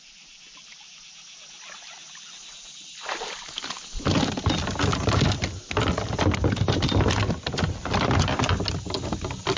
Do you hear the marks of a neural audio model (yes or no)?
no